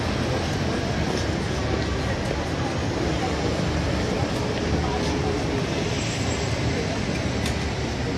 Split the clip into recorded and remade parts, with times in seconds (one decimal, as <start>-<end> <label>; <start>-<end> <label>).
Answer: 0.0-4.2 recorded; 4.2-8.2 remade